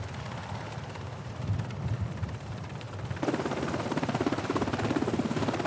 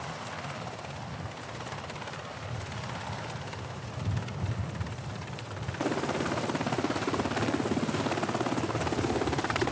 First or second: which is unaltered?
second